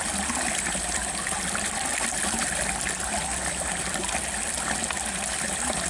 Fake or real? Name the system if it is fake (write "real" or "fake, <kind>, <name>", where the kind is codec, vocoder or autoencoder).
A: real